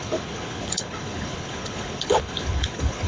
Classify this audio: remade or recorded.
remade